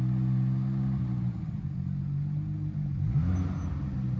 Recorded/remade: recorded